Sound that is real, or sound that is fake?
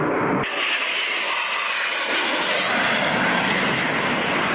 real